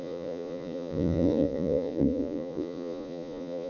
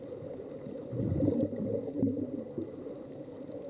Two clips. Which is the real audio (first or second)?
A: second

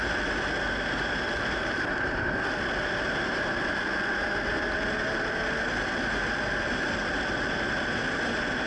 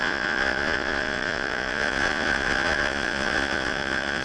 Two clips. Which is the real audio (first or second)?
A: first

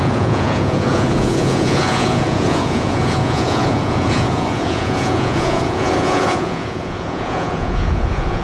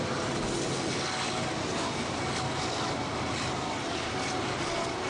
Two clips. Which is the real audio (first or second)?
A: second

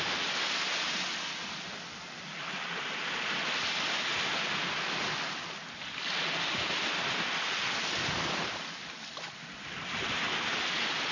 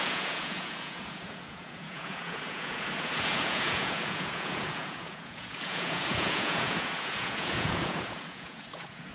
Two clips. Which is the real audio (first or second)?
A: first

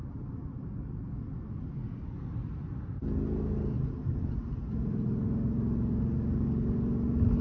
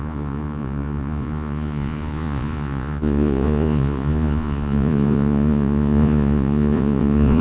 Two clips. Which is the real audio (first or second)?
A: first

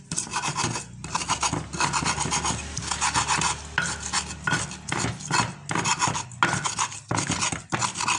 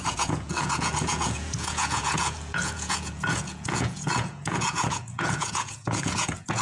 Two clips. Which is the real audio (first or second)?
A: first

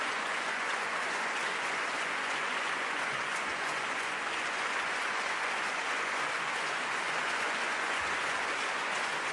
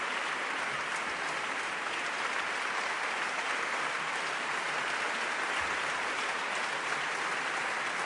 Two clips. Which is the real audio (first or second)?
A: second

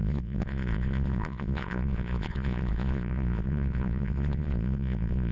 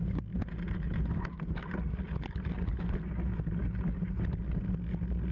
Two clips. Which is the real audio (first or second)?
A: second